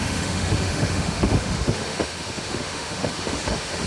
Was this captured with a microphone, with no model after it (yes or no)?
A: no